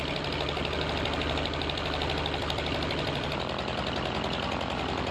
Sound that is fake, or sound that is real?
real